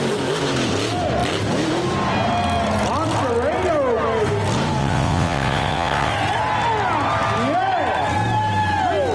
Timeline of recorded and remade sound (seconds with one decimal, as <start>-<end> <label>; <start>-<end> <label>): 0.0-4.8 recorded; 4.8-6.1 remade; 6.1-9.1 recorded